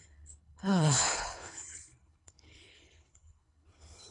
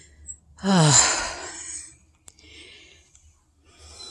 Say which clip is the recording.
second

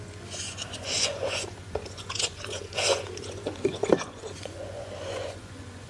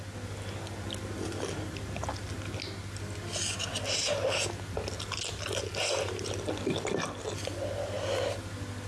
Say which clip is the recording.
second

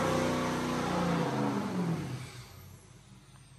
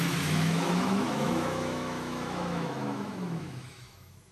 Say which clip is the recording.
first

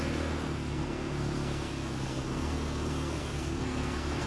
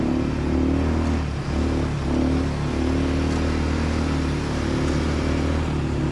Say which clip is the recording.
second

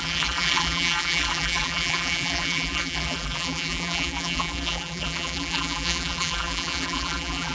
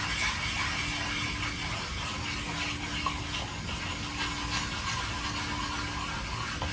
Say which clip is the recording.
second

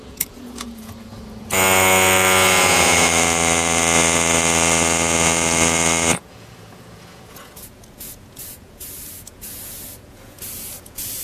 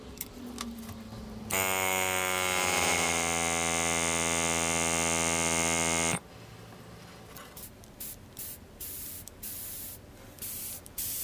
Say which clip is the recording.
second